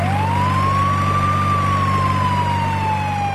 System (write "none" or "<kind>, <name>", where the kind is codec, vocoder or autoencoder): none